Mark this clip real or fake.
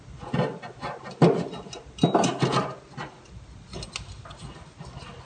real